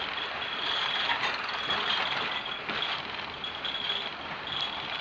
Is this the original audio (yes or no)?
yes